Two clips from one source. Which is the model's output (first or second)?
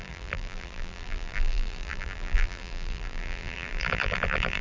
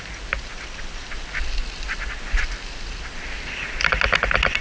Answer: first